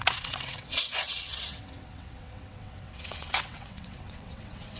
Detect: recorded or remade remade